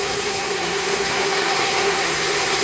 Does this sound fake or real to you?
fake